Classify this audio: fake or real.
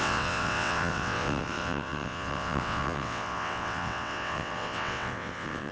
fake